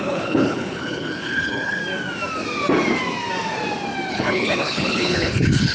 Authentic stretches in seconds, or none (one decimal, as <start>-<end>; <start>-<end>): 1.8-4.1